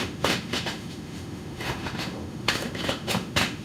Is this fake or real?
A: fake